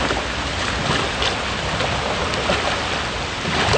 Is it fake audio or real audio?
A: real